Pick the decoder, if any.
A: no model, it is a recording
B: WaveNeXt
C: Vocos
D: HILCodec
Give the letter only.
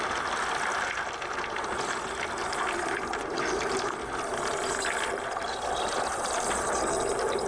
A